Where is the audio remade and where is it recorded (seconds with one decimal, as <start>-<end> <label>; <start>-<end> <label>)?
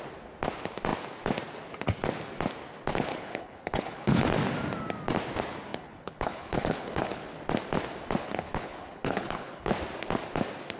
0.0-3.1 recorded; 3.1-4.2 remade; 4.2-5.7 recorded; 5.7-7.2 remade; 7.2-8.2 recorded; 8.2-9.7 remade; 9.7-10.8 recorded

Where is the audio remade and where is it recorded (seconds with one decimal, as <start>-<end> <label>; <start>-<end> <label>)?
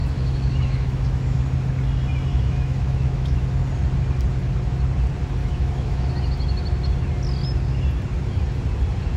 0.0-1.4 remade; 1.4-2.3 recorded; 2.3-3.4 remade; 3.4-5.4 recorded; 5.4-6.1 remade; 6.1-9.2 recorded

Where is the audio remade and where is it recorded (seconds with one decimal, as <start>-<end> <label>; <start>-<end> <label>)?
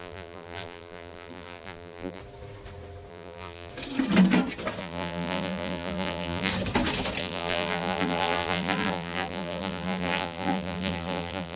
0.0-2.2 remade; 2.2-3.1 recorded; 3.1-3.7 remade; 3.7-4.8 recorded; 4.8-6.5 remade; 6.5-7.2 recorded; 7.2-11.6 remade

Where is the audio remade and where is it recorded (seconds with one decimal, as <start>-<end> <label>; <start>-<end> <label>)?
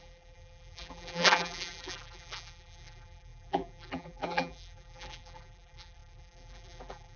0.0-7.2 remade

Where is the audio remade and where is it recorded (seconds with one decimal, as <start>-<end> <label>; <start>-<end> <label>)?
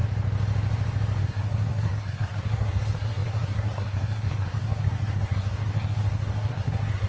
0.0-1.2 recorded; 1.2-7.1 remade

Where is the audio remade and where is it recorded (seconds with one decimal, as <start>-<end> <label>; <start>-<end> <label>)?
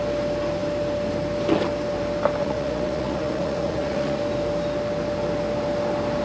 0.0-2.4 recorded; 2.4-4.2 remade; 4.2-6.2 recorded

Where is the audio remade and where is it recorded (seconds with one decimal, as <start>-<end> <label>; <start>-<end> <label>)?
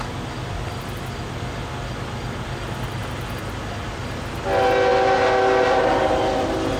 0.0-6.8 recorded